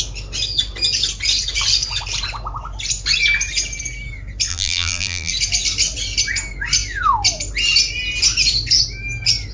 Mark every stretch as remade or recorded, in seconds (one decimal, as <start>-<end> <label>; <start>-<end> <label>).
0.0-4.5 recorded; 4.5-5.3 remade; 5.3-9.5 recorded